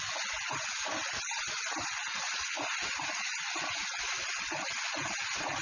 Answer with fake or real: real